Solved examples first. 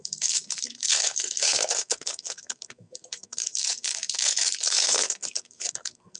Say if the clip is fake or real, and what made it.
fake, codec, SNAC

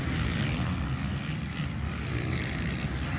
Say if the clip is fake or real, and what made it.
real